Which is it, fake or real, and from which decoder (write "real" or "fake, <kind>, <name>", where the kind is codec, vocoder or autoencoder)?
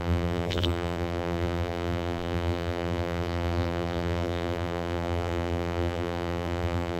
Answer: fake, vocoder, BigVGAN v2